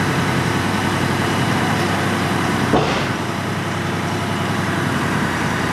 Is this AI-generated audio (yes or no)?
yes